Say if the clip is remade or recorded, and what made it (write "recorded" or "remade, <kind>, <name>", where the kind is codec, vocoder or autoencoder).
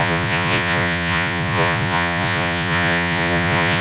remade, vocoder, Vocos